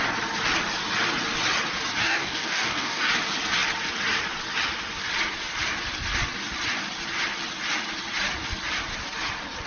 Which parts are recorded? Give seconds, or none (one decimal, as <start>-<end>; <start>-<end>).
0.0-2.0; 3.1-9.7